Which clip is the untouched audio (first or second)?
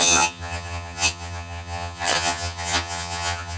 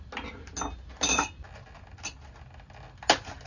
second